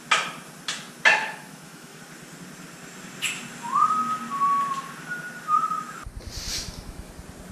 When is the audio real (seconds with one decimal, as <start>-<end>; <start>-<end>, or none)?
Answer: 0.0-1.2; 2.0-6.5; 7.1-7.5